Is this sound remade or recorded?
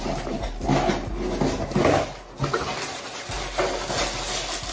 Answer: recorded